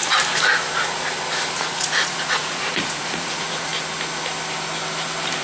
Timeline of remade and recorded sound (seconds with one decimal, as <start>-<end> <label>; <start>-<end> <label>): 0.0-1.5 recorded; 1.5-3.7 remade; 3.7-5.4 recorded